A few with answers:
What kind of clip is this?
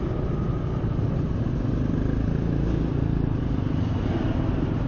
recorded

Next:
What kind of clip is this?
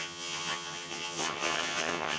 remade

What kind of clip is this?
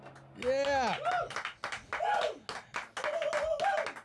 recorded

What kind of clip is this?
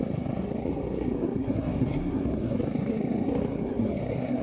remade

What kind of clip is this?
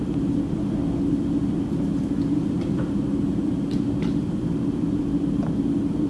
recorded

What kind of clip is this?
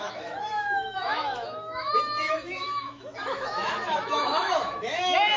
remade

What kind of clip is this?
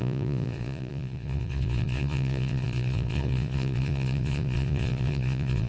remade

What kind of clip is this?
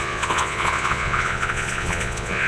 remade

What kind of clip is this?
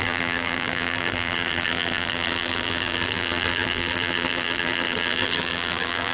remade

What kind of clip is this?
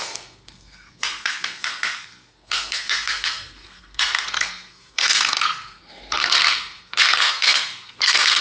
remade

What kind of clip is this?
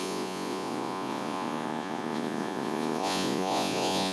remade